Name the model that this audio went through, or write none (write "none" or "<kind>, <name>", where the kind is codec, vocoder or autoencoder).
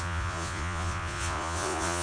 vocoder, Vocos